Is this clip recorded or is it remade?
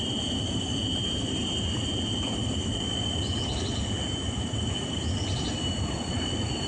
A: recorded